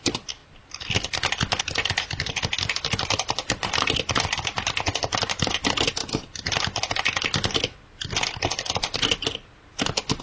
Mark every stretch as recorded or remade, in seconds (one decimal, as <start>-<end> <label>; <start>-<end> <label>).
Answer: 0.0-10.2 recorded